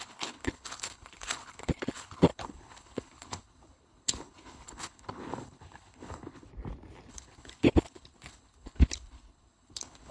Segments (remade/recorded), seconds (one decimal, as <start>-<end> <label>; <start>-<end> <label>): 0.0-6.5 remade; 6.5-7.1 recorded; 7.1-10.1 remade